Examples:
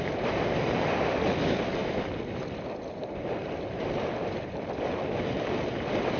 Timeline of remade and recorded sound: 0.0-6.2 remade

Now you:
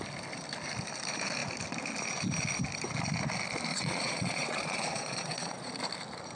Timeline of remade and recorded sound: 0.0-3.7 recorded; 3.7-5.7 remade; 5.7-6.4 recorded

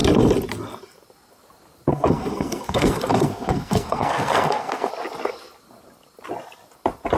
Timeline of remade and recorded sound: 0.0-1.9 recorded; 1.9-4.9 remade; 4.9-7.2 recorded

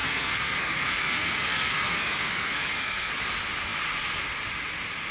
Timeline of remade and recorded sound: 0.0-3.1 remade; 3.1-5.1 recorded

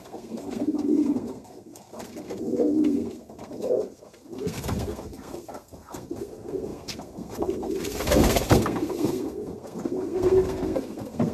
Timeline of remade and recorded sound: 0.0-11.3 remade

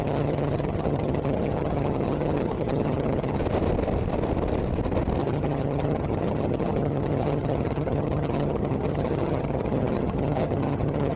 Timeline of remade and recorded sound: 0.0-3.4 remade; 3.4-5.2 recorded; 5.2-11.2 remade